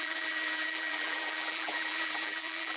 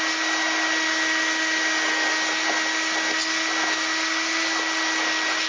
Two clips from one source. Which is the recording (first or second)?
second